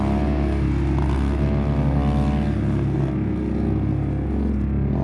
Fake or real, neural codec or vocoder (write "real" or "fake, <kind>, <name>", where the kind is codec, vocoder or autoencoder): real